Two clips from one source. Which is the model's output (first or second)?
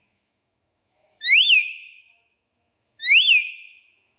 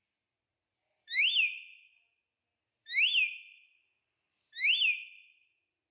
first